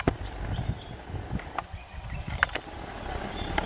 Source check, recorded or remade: recorded